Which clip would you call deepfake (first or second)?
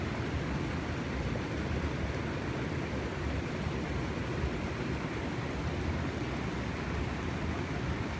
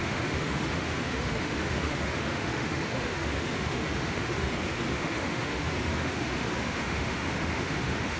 second